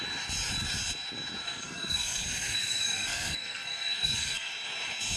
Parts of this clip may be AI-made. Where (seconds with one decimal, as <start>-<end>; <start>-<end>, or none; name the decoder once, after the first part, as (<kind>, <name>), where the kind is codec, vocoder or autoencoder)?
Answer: 1.4-4.5 (codec, SNAC)